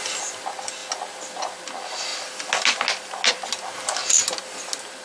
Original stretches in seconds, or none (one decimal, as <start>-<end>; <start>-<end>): 0.0-5.0